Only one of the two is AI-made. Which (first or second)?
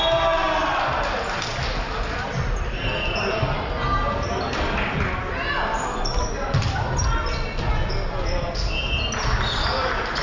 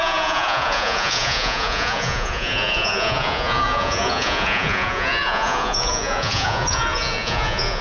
second